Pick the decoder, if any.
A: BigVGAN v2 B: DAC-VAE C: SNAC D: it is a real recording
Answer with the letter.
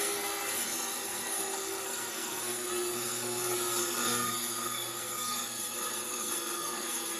C